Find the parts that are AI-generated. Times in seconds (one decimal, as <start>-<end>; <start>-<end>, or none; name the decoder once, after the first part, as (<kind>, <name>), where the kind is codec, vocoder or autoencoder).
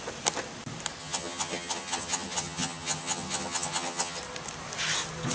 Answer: 1.0-4.2 (vocoder, HiFi-GAN)